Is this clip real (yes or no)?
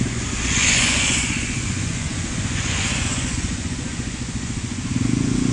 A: no